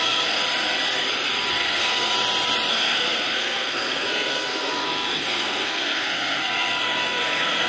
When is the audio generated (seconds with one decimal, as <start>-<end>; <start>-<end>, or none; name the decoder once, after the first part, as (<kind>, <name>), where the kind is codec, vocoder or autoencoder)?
0.0-0.4 (codec, SNAC); 1.5-2.1; 2.7-7.7